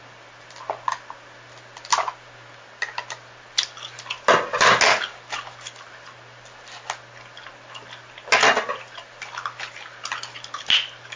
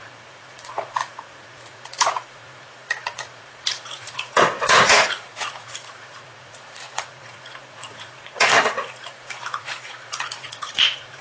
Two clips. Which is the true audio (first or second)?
first